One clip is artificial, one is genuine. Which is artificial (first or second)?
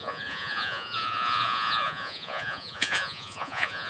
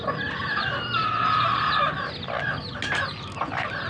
first